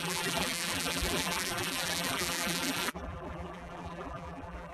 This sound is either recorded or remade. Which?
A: remade